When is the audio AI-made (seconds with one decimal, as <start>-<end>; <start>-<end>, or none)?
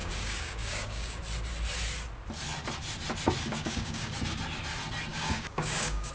0.0-1.2; 3.5-4.1; 5.1-6.1